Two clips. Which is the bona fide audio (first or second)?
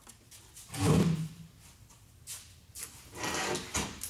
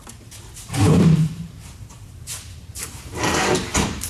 first